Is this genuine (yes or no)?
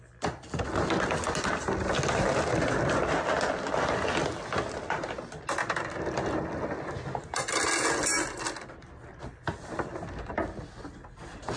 yes